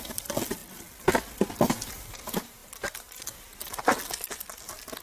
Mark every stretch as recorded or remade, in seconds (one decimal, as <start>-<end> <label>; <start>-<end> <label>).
0.0-5.0 recorded